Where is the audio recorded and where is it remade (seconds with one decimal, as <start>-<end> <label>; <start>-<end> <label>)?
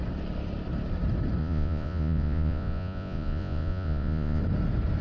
0.0-1.4 recorded; 1.4-4.4 remade; 4.4-5.0 recorded